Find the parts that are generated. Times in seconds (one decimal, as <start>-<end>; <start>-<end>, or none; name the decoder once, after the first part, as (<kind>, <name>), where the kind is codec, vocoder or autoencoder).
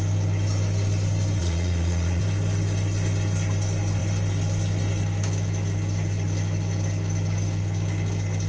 1.4-2.2 (vocoder, Vocos)